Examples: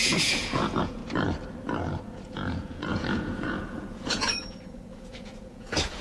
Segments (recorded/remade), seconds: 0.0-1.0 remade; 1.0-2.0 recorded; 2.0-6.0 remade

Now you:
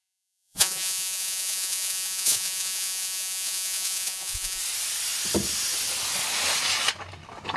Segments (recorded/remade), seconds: 0.0-4.6 remade; 4.6-7.6 recorded

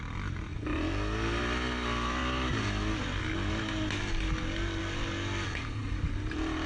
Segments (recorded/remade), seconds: 0.0-6.7 recorded